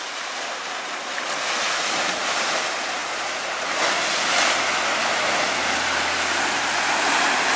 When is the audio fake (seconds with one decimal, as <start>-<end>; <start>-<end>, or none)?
none